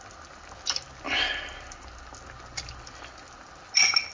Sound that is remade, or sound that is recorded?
recorded